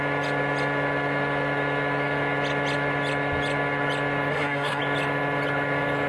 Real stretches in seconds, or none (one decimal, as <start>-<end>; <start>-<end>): 0.0-4.3; 4.8-6.1